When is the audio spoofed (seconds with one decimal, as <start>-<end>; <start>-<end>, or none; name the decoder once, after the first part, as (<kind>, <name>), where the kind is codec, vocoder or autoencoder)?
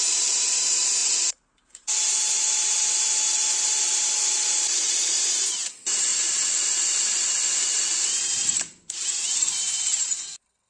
0.0-6.1 (vocoder, BigVGAN v2); 8.1-10.7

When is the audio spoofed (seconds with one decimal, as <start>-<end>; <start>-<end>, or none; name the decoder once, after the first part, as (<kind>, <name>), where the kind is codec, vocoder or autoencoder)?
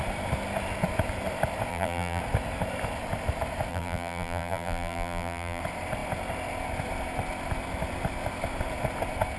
1.7-2.2 (vocoder, BigVGAN v2); 3.7-5.6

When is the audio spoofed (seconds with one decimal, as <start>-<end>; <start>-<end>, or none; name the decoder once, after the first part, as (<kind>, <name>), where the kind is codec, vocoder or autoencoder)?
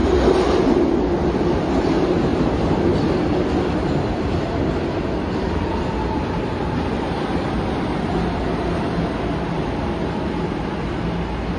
0.0-1.1 (vocoder, BigVGAN v2); 2.3-4.6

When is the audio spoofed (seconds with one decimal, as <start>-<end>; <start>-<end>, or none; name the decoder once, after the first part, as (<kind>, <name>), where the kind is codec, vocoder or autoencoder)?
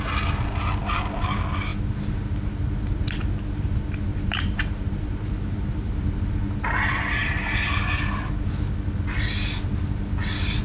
4.1-6.4 (vocoder, BigVGAN v2); 7.2-7.8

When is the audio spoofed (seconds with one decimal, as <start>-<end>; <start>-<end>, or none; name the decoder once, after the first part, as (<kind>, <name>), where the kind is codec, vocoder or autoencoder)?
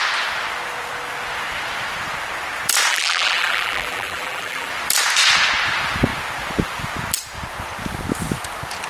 2.9-4.7 (vocoder, BigVGAN v2)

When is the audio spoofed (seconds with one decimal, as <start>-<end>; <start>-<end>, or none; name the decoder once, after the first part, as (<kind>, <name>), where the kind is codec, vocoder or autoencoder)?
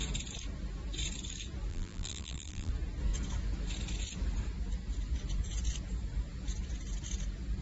1.7-2.7 (vocoder, BigVGAN v2)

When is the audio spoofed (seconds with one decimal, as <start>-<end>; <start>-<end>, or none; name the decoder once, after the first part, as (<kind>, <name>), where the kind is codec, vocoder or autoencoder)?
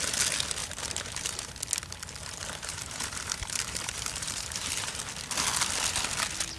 0.6-1.5 (vocoder, BigVGAN v2); 2.4-5.0